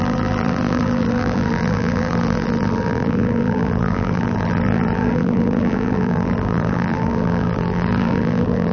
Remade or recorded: remade